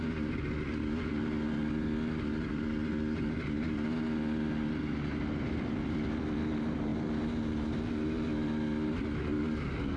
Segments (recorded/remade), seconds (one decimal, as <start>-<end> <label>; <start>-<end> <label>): 0.0-10.0 recorded